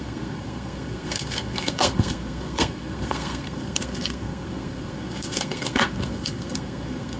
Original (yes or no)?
no